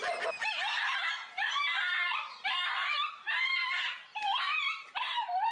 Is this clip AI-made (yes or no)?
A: yes